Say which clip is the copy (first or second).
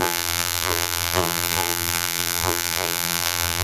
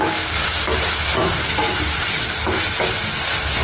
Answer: first